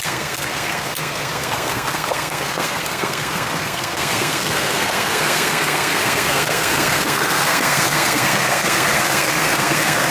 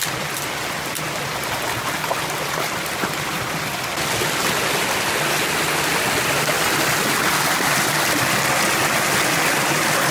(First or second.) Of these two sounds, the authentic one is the second